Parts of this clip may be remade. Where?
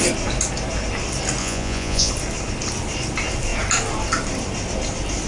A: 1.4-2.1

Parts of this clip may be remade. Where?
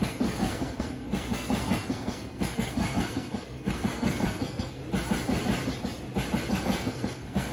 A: 0.0-4.8; 6.5-7.5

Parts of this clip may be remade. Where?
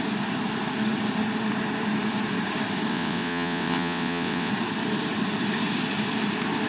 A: 2.9-4.5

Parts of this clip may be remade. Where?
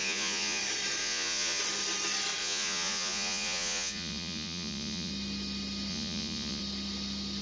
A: 0.0-0.6; 1.0-1.6; 2.4-5.1; 5.9-6.6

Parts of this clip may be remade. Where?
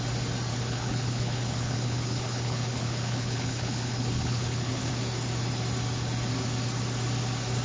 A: 0.5-4.9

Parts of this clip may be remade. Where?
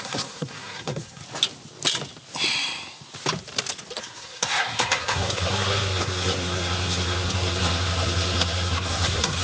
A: 0.0-1.2; 4.0-9.4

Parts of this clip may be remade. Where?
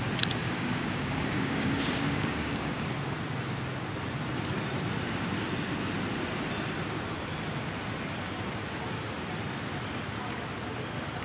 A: 0.4-2.8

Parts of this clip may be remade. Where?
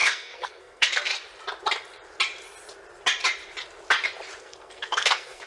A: 0.0-1.1; 4.4-5.5